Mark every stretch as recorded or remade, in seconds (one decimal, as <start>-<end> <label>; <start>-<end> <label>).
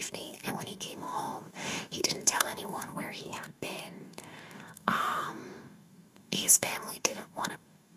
0.0-8.0 remade